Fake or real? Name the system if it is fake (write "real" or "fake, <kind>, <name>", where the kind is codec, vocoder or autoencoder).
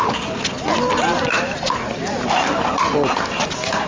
real